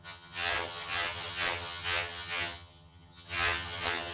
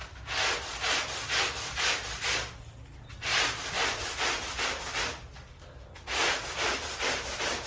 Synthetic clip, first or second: first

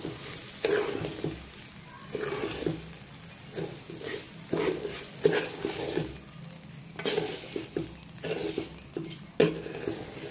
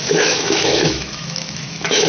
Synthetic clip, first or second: second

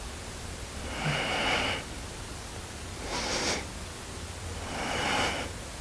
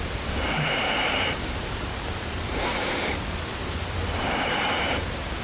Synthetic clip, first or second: second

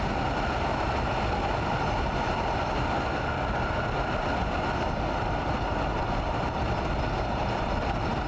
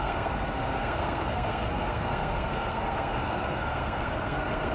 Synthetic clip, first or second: second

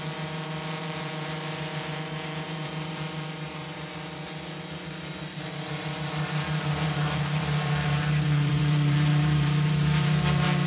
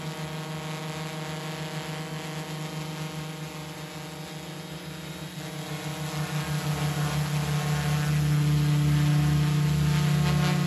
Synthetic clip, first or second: first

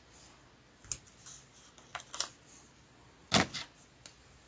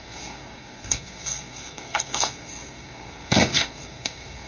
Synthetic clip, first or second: second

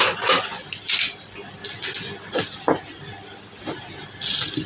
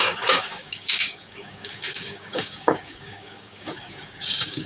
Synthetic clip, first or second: second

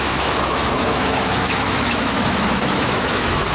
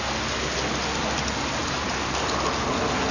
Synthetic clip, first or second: first